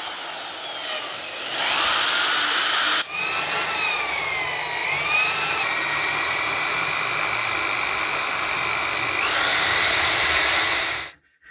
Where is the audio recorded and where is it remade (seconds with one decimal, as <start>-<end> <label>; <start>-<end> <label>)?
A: 0.0-4.8 recorded; 4.8-6.8 remade; 6.8-9.5 recorded; 9.5-10.6 remade; 10.6-11.5 recorded